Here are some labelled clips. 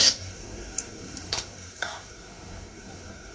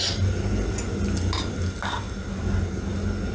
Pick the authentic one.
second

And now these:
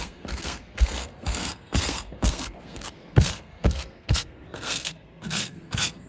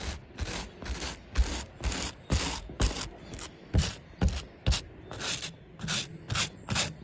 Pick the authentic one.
second